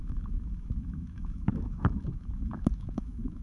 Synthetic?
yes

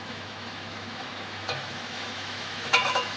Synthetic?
yes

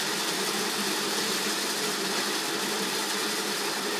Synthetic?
no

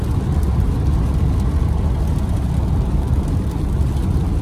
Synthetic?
no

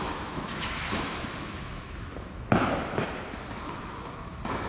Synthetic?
yes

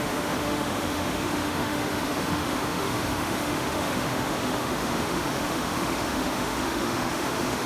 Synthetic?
yes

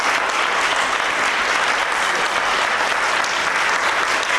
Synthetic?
no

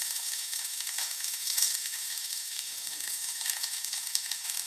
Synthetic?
yes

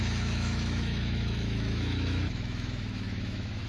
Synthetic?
yes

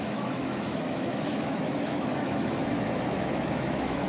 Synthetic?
yes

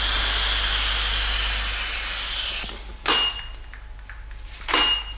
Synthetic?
no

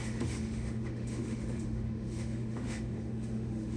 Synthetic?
yes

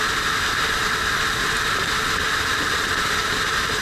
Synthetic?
no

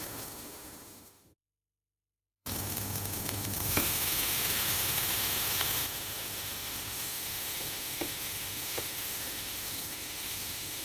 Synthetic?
yes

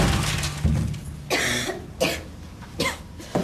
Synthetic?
no